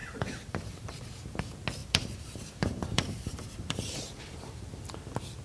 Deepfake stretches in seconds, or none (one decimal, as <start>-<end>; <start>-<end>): 0.0-1.4; 1.8-4.6